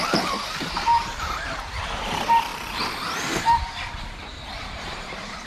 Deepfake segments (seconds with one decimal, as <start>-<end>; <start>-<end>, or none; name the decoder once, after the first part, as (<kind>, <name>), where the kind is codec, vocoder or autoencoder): 0.0-4.3 (vocoder, BigVGAN v2); 4.8-5.5